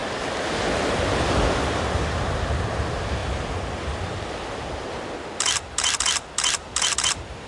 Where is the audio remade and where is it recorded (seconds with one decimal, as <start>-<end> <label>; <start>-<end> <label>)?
0.0-7.5 recorded